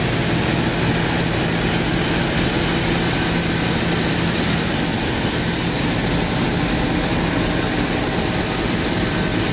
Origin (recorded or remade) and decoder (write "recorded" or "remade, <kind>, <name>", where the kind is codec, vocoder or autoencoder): recorded